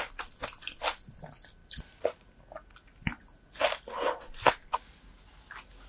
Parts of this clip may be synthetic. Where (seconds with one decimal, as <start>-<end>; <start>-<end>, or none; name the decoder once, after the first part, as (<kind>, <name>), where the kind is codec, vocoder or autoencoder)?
none

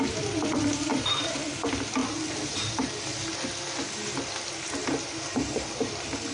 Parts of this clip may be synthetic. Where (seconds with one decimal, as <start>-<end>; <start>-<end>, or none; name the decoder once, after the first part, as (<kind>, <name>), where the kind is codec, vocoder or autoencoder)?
0.9-1.5 (vocoder, BigVGAN v2); 2.0-3.0; 4.8-5.7